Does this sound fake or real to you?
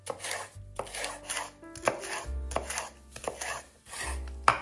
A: real